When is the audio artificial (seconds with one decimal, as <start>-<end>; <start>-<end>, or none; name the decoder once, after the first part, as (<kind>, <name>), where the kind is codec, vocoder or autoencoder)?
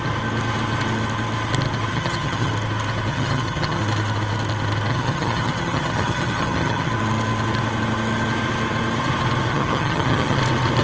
1.9-2.5 (vocoder, HiFi-GAN); 3.1-3.8; 4.9-6.9; 9.5-10.4